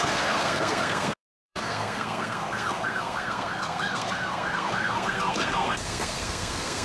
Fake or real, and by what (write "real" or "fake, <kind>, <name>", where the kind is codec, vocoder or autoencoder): fake, codec, SNAC